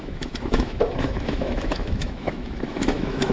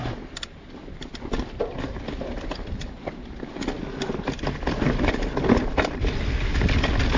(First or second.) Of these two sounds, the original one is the second